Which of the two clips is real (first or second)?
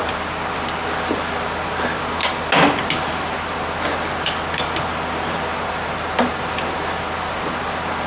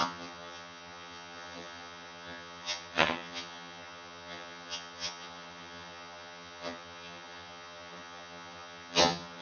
first